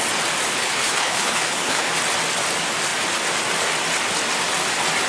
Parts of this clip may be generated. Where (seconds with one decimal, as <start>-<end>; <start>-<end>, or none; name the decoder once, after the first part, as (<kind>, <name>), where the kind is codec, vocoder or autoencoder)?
0.6-1.9 (codec, HILCodec)